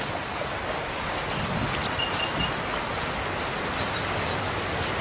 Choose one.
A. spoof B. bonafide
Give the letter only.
B